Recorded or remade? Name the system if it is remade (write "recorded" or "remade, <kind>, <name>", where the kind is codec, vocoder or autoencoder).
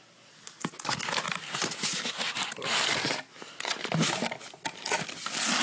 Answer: recorded